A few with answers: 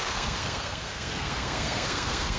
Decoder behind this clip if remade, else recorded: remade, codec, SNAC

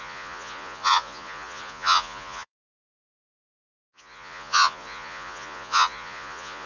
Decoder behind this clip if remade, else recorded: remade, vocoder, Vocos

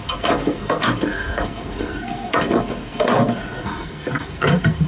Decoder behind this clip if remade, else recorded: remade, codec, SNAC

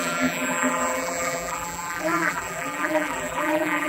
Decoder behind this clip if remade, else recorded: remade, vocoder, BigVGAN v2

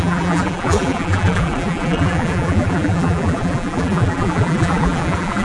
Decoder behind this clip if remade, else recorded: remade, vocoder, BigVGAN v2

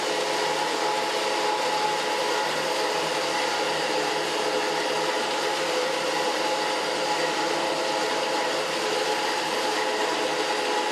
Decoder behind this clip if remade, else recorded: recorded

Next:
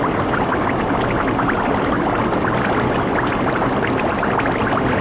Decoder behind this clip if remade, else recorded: recorded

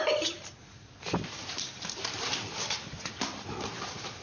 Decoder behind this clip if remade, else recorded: remade, vocoder, BigVGAN v2